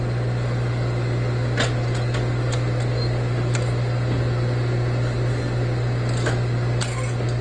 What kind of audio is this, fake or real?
real